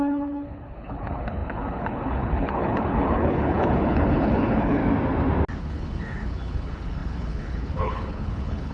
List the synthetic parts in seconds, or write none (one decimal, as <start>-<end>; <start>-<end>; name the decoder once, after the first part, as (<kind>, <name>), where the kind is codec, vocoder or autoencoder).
0.0-4.8 (codec, HILCodec); 5.6-8.7